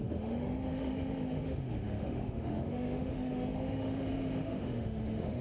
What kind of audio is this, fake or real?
fake